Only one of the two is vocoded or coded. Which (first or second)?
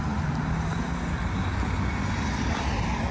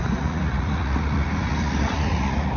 second